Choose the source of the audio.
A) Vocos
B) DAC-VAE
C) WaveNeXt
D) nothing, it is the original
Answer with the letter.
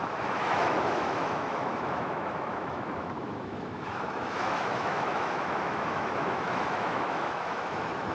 B